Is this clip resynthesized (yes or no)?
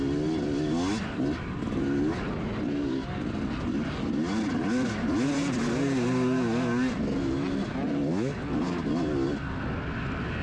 no